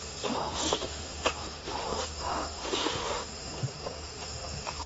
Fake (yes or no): yes